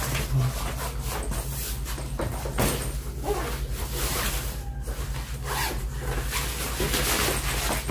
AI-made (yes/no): no